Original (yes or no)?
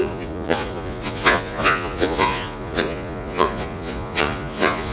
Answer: no